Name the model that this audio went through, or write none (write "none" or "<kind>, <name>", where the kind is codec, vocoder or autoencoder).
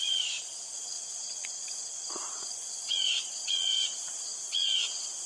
vocoder, WaveNeXt